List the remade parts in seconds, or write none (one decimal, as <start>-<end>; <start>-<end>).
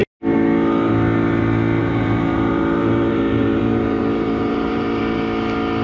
1.8-5.0